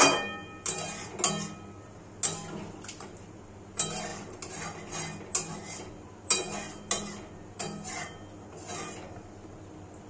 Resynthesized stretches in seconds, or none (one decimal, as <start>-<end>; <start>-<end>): none